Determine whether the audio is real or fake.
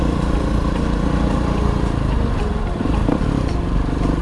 fake